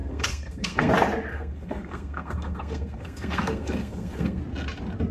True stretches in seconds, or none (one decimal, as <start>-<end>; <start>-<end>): 0.9-1.3; 4.4-5.1